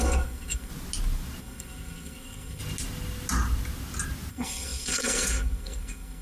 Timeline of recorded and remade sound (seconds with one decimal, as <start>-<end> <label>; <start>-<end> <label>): 0.0-0.7 remade; 0.7-1.4 recorded; 1.4-2.6 remade; 2.6-4.3 recorded; 4.3-6.2 remade